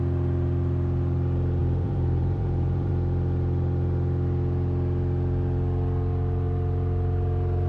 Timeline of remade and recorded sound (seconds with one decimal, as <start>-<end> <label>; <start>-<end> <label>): 0.0-1.6 recorded; 1.6-2.9 remade; 2.9-7.7 recorded

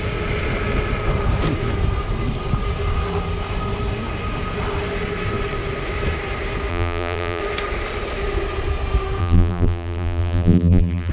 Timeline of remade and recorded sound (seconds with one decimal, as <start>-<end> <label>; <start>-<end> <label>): 0.0-6.7 recorded; 6.7-7.4 remade; 7.4-9.2 recorded; 9.2-11.1 remade

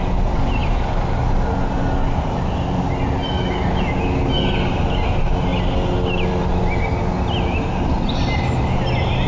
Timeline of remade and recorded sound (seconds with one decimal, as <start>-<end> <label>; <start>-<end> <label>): 0.0-9.3 recorded

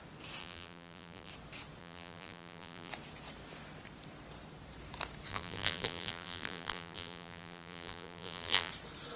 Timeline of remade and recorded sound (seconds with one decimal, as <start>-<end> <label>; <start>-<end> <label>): 0.0-0.4 recorded; 0.4-1.3 remade; 1.3-1.8 recorded; 1.8-2.9 remade; 2.9-5.3 recorded; 5.3-8.7 remade; 8.7-9.2 recorded

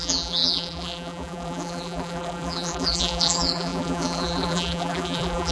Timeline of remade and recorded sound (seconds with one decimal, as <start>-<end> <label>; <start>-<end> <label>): 0.0-5.5 remade

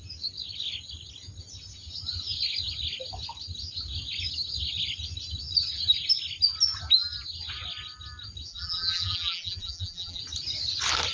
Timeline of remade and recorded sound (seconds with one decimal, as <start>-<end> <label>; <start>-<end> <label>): 0.0-8.5 recorded; 8.5-10.2 remade; 10.2-11.1 recorded

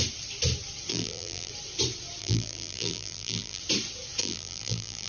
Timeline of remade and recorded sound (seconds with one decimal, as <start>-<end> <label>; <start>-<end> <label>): 0.0-0.9 recorded; 0.9-1.5 remade; 1.5-2.2 recorded; 2.2-3.6 remade; 3.6-4.2 recorded; 4.2-5.1 remade

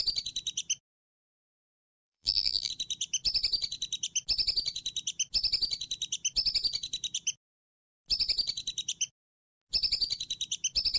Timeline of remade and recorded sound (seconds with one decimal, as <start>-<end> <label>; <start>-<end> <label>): 0.0-1.9 recorded; 1.9-2.7 remade; 2.7-11.0 recorded